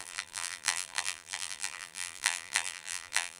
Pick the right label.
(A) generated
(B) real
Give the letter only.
A